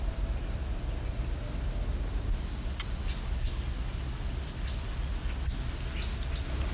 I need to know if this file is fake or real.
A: real